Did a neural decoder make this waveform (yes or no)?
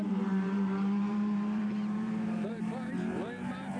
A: yes